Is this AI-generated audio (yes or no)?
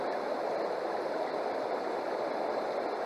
no